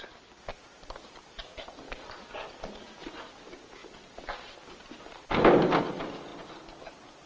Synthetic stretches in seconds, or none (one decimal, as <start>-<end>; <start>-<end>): none